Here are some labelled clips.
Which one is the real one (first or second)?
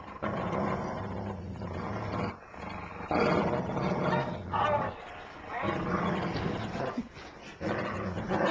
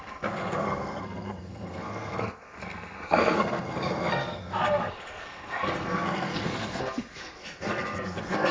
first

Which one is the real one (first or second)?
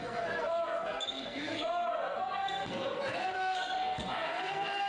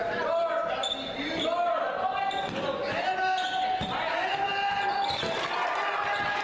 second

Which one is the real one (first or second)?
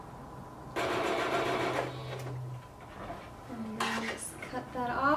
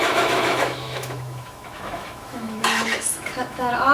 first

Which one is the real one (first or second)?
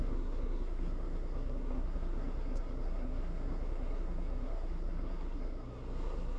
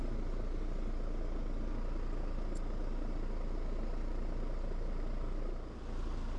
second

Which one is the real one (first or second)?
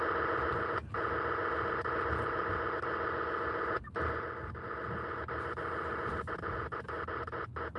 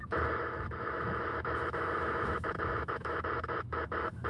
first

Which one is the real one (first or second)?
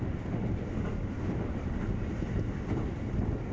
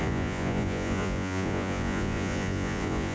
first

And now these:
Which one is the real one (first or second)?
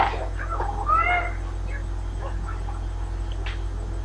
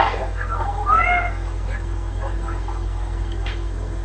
first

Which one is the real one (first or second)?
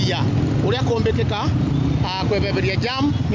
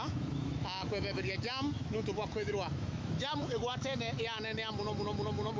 first